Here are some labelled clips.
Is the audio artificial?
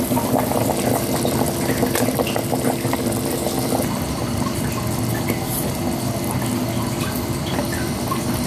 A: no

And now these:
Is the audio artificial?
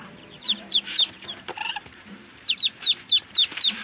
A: yes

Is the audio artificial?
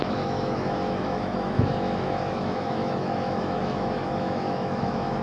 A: yes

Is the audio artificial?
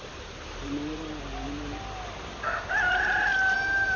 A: no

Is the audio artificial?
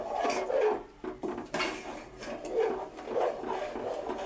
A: no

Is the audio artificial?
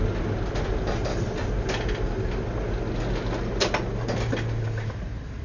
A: no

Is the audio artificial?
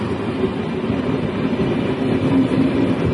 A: no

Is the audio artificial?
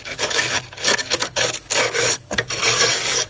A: yes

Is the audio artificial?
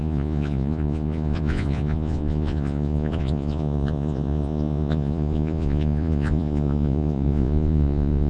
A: yes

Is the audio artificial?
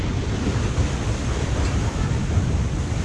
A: no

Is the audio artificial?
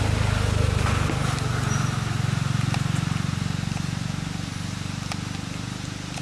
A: no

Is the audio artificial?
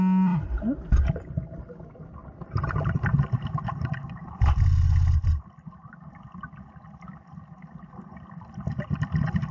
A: no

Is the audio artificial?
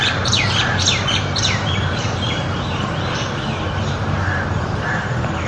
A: yes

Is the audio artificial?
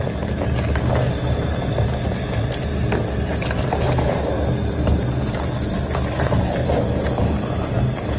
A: no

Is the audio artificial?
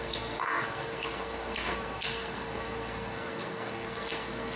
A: yes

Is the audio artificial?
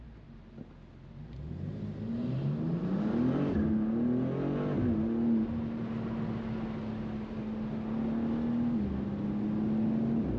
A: no